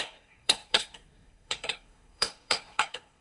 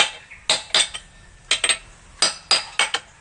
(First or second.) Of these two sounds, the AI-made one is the first